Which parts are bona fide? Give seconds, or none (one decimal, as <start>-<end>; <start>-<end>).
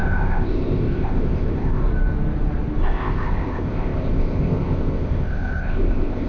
1.8-2.8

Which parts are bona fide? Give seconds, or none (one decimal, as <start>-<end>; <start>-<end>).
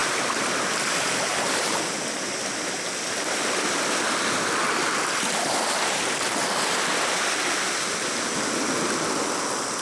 1.8-9.8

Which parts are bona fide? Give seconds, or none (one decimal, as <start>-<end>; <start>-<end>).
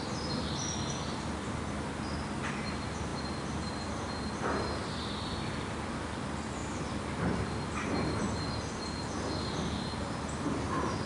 0.0-11.1